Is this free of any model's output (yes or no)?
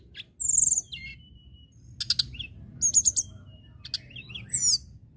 yes